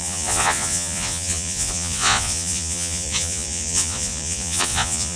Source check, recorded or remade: remade